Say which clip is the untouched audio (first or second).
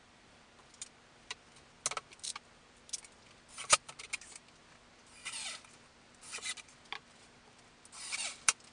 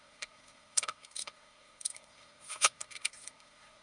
first